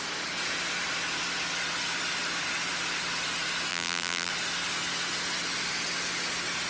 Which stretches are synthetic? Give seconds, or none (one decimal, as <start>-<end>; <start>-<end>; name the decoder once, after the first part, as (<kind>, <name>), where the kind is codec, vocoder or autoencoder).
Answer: 3.7-4.3 (vocoder, BigVGAN v2)